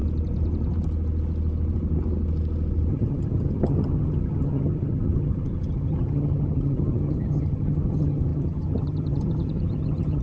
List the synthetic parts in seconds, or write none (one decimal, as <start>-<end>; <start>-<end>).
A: 2.9-10.2